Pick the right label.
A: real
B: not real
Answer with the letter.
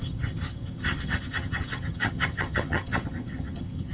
B